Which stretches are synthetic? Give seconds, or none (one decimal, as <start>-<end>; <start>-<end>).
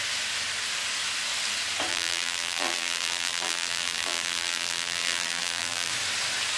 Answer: 1.9-5.9